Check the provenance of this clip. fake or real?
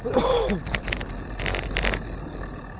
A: real